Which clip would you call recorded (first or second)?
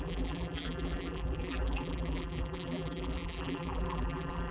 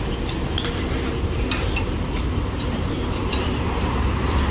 second